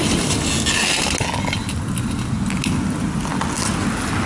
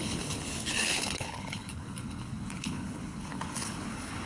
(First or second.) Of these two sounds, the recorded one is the first